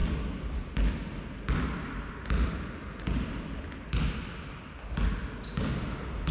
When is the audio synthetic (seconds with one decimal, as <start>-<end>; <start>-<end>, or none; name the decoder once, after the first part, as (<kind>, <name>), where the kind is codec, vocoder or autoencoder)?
none